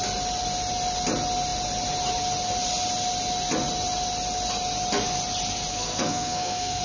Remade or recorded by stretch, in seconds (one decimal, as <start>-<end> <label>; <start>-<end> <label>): 0.0-5.7 recorded; 5.7-6.8 remade